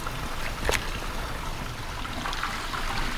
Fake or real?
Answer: real